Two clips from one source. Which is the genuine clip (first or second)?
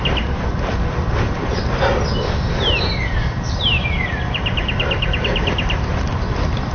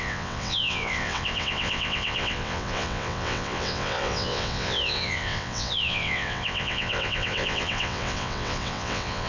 first